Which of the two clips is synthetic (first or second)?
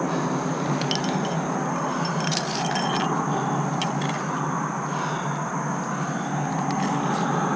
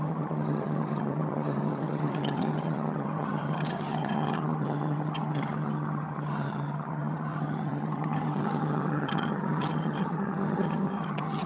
second